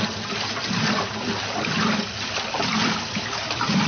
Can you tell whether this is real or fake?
real